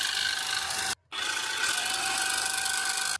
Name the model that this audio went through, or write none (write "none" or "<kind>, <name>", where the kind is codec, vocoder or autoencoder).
none